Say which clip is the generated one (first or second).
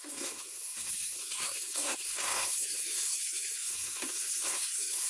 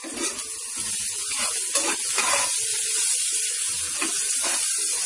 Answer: first